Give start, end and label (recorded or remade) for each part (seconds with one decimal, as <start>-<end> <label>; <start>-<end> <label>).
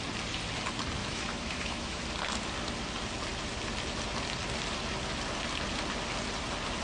0.0-1.0 recorded; 1.0-2.0 remade; 2.0-6.8 recorded